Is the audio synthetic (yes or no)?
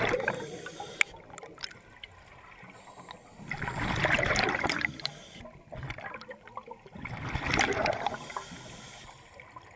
no